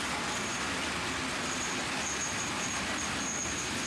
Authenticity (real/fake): real